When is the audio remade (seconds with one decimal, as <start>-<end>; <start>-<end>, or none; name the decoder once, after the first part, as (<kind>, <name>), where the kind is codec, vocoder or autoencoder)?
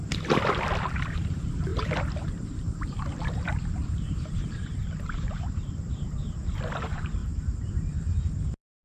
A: 1.0-6.2 (vocoder, BigVGAN v2); 6.8-8.8